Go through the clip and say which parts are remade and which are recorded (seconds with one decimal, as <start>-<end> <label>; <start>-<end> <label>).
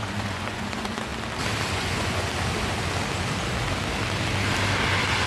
0.0-1.1 remade; 1.1-1.7 recorded; 1.7-2.3 remade; 2.3-5.3 recorded